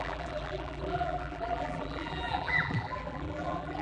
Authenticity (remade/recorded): remade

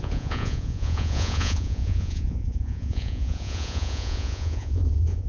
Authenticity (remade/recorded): remade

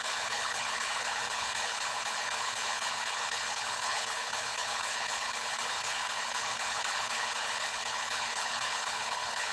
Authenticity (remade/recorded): remade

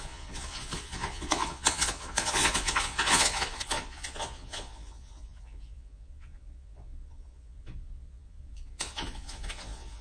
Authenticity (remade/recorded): remade